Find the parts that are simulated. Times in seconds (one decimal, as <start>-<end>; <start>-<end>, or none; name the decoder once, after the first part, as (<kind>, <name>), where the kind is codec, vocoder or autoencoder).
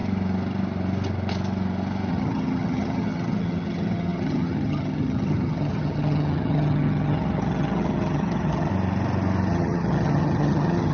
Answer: 2.1-8.7 (vocoder, HiFi-GAN); 9.5-10.9